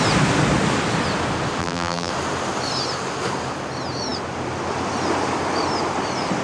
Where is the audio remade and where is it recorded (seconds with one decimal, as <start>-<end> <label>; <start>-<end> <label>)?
0.0-1.6 recorded; 1.6-2.1 remade; 2.1-6.4 recorded